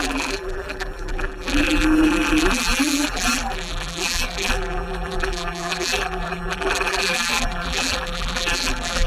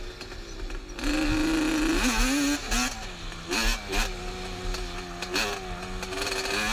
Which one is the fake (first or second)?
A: first